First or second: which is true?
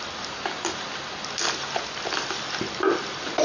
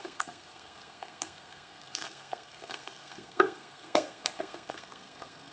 first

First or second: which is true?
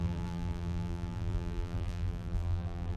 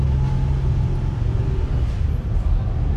second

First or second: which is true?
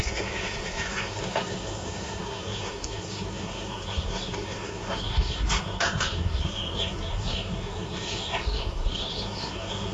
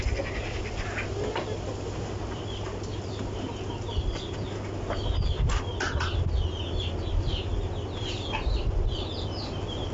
second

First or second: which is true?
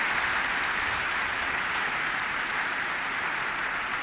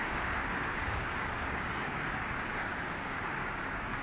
first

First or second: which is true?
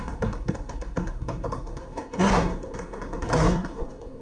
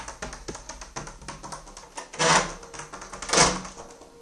second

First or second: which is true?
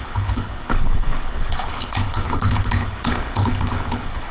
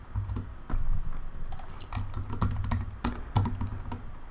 second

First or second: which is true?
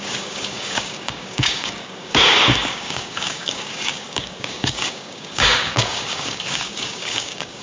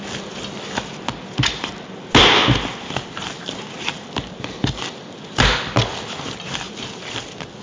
second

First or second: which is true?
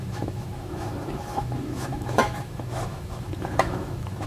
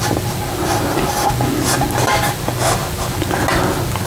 second